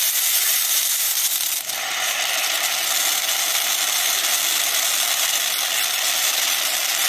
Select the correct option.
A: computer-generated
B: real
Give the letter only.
B